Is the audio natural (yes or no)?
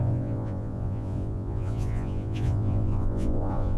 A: no